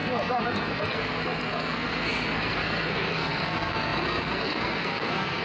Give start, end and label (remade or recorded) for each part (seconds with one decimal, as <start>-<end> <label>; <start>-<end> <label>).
0.0-5.4 remade